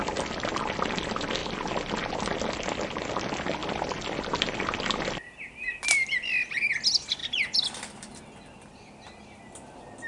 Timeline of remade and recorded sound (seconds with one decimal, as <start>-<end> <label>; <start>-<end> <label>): 0.0-1.4 recorded; 1.4-2.1 remade; 2.1-3.6 recorded; 3.6-5.7 remade; 5.7-7.2 recorded; 7.2-8.2 remade; 8.2-10.1 recorded